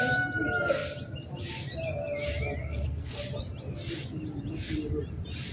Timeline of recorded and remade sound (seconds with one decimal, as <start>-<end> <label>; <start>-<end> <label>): 0.0-2.6 recorded; 2.6-3.2 remade; 3.2-5.5 recorded